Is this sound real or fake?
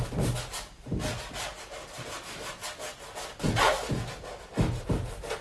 real